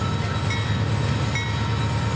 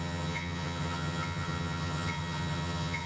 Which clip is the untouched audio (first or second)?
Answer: first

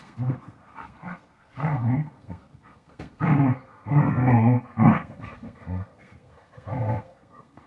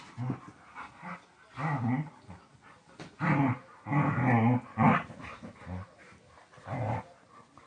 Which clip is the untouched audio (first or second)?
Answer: second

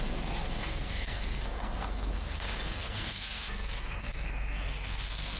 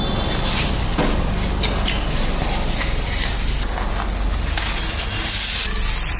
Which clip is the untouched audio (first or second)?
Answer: second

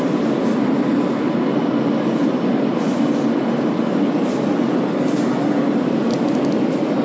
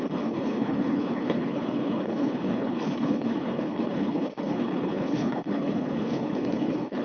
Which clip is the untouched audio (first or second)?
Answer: first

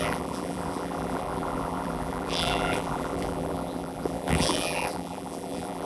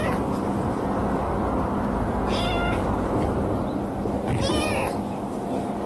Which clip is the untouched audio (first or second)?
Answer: second